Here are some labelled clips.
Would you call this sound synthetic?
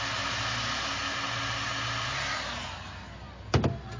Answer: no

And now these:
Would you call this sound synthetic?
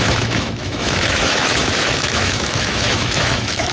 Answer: yes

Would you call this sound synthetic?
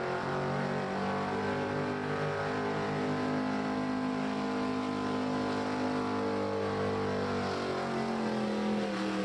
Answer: no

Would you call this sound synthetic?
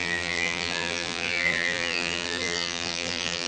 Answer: yes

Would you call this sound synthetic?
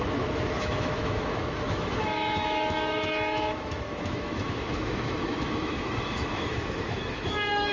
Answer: yes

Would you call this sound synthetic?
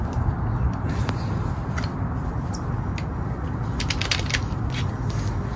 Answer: no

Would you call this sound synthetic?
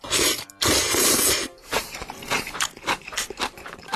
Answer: yes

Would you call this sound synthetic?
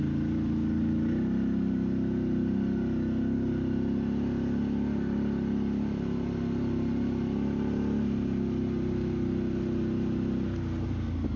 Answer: no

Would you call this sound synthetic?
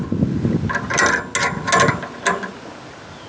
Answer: no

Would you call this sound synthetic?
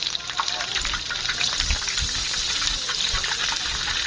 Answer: no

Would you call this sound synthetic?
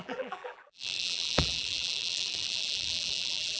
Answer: yes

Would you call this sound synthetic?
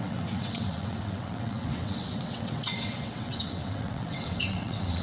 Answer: yes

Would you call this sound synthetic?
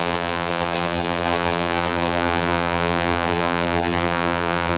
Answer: yes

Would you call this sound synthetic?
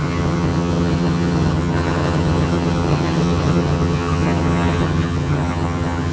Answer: yes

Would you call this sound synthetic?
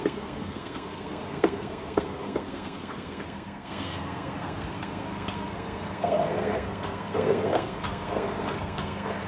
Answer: yes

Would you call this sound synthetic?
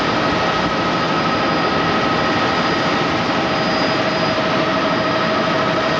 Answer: no